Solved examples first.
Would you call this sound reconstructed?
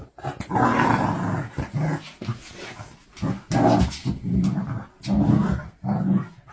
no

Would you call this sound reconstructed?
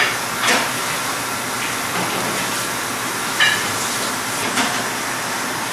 no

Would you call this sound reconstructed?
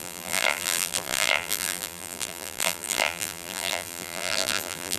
yes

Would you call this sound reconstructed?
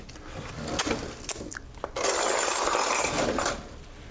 no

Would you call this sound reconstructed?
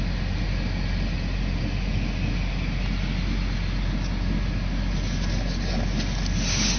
no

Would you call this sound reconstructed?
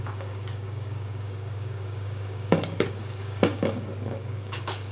yes